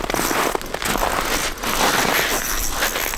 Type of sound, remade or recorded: recorded